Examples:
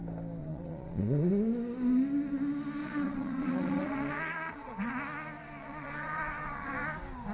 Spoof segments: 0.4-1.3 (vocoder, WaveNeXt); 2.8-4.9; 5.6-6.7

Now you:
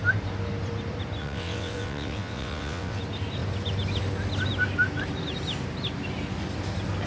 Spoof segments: 1.2-3.0 (vocoder, WaveNeXt)